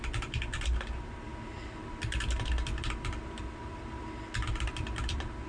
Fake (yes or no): yes